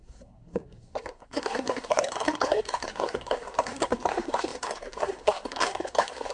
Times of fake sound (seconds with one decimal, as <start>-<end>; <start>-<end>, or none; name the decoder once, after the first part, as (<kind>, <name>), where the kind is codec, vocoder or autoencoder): 0.0-6.3 (codec, SNAC)